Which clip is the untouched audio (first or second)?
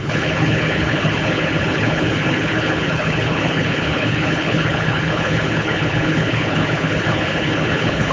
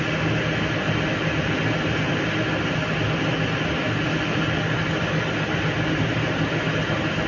second